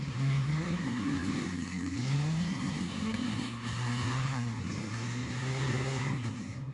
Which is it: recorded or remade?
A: remade